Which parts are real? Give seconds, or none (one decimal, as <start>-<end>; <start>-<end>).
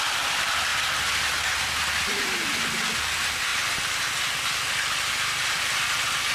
0.7-2.0